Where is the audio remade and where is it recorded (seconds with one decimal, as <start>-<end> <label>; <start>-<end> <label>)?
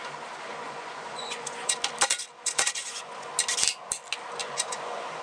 0.0-0.5 recorded; 0.5-1.8 remade; 1.8-2.4 recorded; 2.4-3.3 remade; 3.3-4.4 recorded; 4.4-5.2 remade